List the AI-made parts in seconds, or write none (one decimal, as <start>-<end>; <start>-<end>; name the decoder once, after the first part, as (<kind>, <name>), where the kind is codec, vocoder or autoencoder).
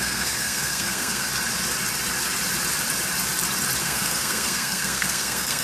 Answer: 0.0-1.3 (codec, SNAC); 3.8-5.6